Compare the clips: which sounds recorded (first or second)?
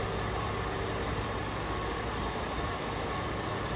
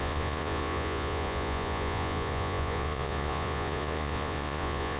first